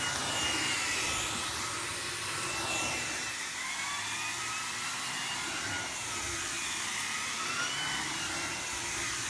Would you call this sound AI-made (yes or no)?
yes